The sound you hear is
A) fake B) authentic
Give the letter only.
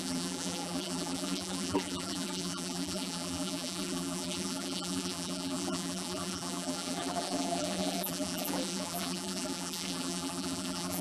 A